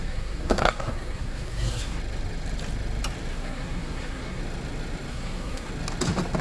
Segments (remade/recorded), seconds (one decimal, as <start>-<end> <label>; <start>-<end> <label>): 0.0-2.0 remade; 2.0-3.3 recorded; 3.3-4.4 remade; 4.4-5.1 recorded; 5.1-5.7 remade; 5.7-6.4 recorded

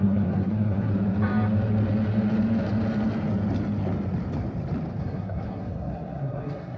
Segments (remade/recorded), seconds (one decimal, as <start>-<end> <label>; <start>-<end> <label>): 0.0-0.9 remade; 0.9-5.0 recorded; 5.0-6.8 remade

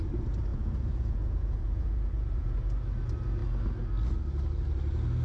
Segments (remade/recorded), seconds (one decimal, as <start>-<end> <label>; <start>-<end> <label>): 0.0-0.5 recorded; 0.5-2.6 remade; 2.6-5.2 recorded

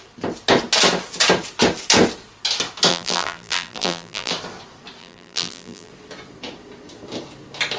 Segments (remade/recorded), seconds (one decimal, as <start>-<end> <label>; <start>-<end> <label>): 0.0-2.9 recorded; 2.9-4.3 remade; 4.3-5.0 recorded; 5.0-5.9 remade; 5.9-7.8 recorded

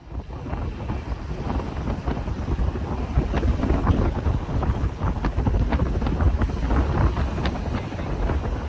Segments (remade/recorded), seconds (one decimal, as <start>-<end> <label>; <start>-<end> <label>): 0.0-3.8 recorded; 3.8-5.1 remade; 5.1-8.7 recorded

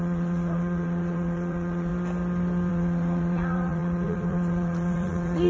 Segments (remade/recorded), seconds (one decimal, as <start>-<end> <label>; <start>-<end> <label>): 0.0-1.9 remade; 1.9-2.7 recorded; 2.7-5.5 remade